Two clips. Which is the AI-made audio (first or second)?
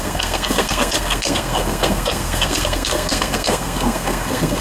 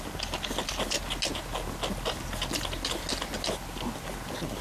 first